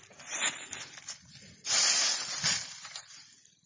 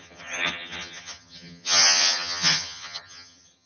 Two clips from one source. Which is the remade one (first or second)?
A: second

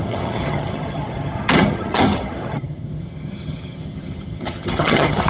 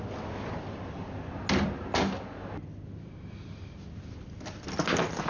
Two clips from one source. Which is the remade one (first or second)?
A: first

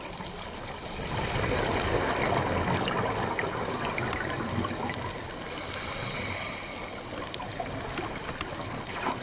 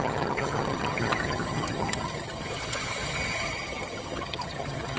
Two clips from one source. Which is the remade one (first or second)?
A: second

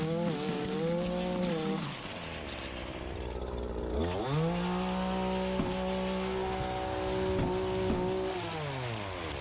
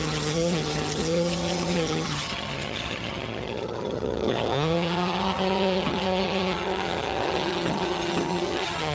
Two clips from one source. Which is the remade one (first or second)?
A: second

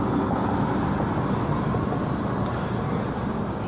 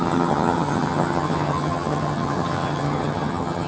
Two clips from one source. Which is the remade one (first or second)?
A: second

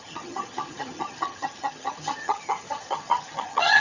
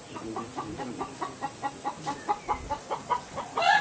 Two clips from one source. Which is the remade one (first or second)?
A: first